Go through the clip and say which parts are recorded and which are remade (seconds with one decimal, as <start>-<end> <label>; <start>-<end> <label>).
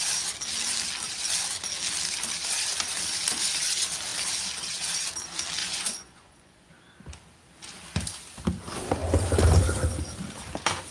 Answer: 0.0-5.6 recorded; 5.6-6.7 remade; 6.7-10.9 recorded